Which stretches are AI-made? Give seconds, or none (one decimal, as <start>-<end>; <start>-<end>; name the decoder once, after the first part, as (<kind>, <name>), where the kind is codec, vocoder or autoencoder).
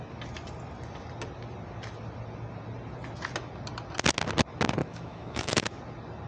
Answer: 4.8-5.8 (autoencoder, DAC-VAE)